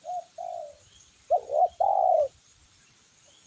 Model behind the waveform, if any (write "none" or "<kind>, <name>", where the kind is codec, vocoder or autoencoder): vocoder, BigVGAN v2